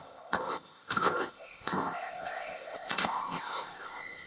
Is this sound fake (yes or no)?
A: yes